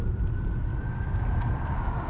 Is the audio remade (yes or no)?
no